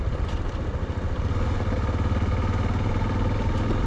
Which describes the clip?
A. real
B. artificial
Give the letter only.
A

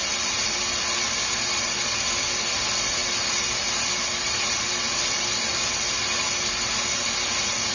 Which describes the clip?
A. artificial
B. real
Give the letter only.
B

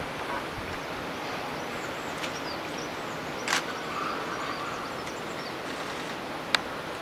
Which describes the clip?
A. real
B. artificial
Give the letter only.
A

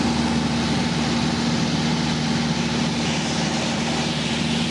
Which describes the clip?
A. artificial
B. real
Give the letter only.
B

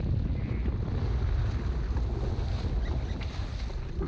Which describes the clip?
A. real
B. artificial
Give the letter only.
A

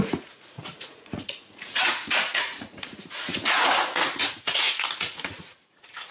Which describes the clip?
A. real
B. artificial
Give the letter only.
B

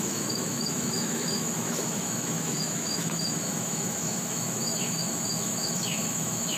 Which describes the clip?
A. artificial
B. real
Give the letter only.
A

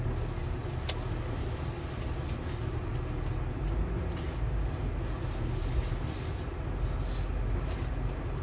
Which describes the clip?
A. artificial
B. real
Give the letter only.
B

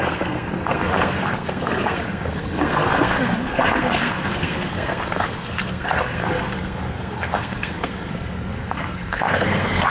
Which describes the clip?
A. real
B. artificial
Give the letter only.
B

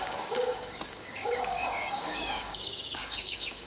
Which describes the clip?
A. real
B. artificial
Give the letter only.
B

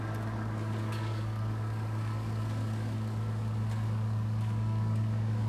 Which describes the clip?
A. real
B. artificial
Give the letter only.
B